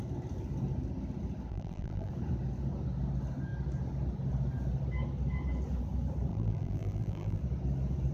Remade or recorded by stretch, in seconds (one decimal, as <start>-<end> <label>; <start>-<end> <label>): 0.0-1.5 recorded; 1.5-2.1 remade; 2.1-6.3 recorded; 6.3-7.4 remade; 7.4-8.1 recorded